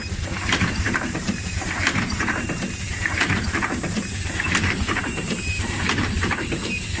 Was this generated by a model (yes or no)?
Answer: yes